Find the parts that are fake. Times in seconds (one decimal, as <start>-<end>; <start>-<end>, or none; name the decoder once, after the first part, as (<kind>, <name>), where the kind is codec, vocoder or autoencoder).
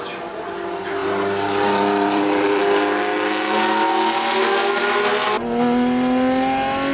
1.0-2.6 (vocoder, BigVGAN v2)